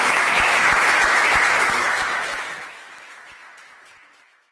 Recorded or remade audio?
remade